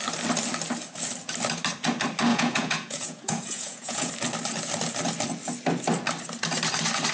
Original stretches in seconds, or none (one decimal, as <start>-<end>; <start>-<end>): 0.0-2.3; 4.1-7.1